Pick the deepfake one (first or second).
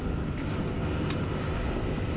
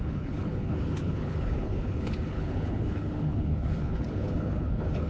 second